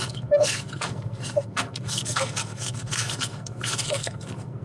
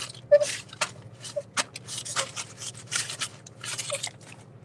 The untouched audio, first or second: second